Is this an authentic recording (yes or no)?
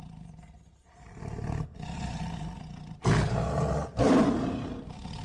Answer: yes